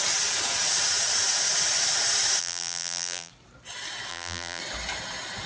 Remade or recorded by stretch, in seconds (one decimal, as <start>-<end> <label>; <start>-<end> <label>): 0.0-2.4 recorded; 2.4-3.3 remade; 3.3-4.1 recorded; 4.1-4.6 remade; 4.6-5.5 recorded